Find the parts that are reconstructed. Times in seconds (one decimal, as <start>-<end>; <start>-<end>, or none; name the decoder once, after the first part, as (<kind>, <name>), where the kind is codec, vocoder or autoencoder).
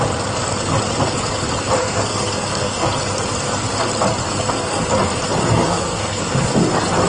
1.8-2.9 (codec, SNAC); 4.2-4.8; 5.4-6.2